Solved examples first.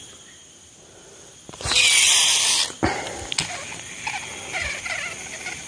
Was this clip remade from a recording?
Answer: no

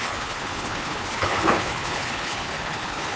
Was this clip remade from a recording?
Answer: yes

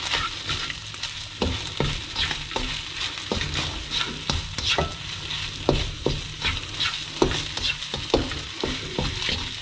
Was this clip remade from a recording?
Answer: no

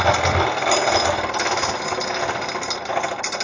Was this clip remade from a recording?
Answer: no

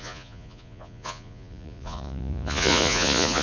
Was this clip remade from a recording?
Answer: yes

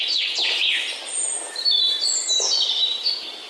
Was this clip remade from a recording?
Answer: no